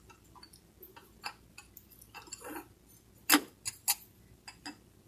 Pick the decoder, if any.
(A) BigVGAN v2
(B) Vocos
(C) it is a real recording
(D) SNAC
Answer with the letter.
C